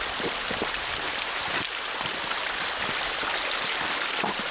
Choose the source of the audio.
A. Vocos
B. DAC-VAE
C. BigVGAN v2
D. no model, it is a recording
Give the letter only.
D